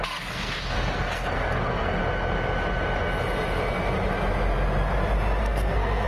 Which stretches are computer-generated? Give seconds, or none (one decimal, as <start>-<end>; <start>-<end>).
0.0-2.0; 5.4-6.1